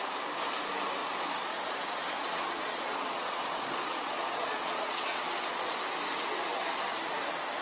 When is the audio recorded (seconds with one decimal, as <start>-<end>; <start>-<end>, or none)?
0.0-1.0; 5.6-7.6

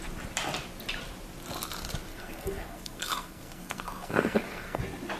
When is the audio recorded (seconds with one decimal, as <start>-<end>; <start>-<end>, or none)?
0.0-2.1; 4.8-5.2

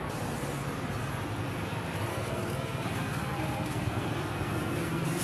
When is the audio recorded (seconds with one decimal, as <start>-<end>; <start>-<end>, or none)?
0.0-2.1

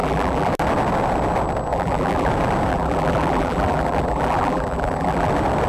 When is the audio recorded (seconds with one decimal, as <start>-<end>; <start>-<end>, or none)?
0.5-1.7; 2.3-2.7; 5.3-5.7

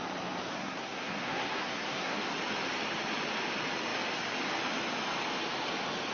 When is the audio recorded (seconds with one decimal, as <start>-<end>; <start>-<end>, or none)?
0.0-0.5; 2.2-6.1

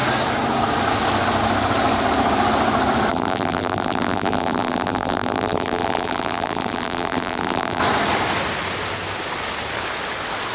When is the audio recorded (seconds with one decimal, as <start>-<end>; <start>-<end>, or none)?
0.0-3.1; 7.8-10.5